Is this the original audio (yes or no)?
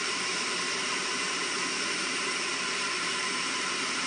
no